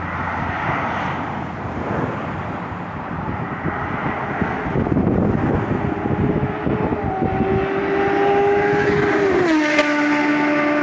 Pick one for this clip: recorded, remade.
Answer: recorded